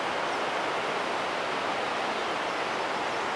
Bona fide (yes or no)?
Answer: yes